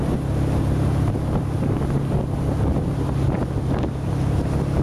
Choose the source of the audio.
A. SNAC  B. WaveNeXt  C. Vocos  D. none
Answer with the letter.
D